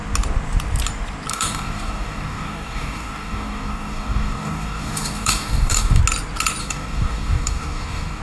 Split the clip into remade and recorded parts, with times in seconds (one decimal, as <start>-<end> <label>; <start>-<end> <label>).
0.0-1.3 recorded; 1.3-6.0 remade; 6.0-6.6 recorded; 6.6-8.2 remade

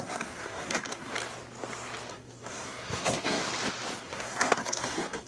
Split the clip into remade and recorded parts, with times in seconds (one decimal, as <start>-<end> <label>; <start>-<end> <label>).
0.0-1.1 remade; 1.1-2.1 recorded; 2.1-3.4 remade; 3.4-4.0 recorded; 4.0-5.3 remade

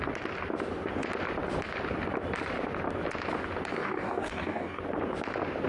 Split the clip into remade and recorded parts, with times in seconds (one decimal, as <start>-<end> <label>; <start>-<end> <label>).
0.0-3.7 recorded; 3.7-4.8 remade; 4.8-5.7 recorded

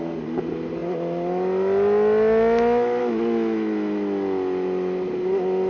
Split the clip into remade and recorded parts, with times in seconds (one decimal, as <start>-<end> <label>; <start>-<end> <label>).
0.0-5.7 recorded

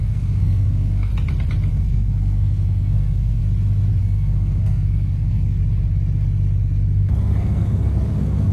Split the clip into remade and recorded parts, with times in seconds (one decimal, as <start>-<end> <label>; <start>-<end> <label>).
0.0-1.1 remade; 1.1-1.7 recorded; 1.7-3.4 remade; 3.4-4.0 recorded; 4.0-5.6 remade; 5.6-7.0 recorded; 7.0-8.5 remade